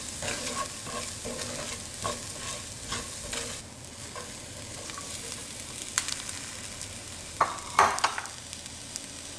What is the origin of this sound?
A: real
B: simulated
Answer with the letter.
A